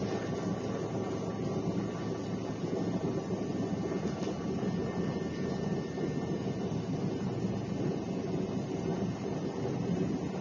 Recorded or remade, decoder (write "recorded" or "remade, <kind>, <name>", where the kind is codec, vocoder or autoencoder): recorded